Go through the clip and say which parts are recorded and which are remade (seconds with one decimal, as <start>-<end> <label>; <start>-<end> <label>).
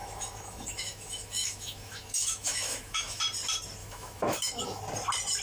0.0-3.2 remade; 3.2-3.8 recorded; 3.8-4.8 remade; 4.8-5.4 recorded